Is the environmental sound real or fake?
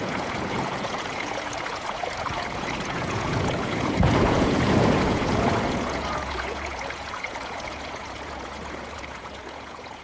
fake